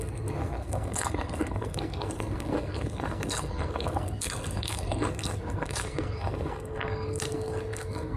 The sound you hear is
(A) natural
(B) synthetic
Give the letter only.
B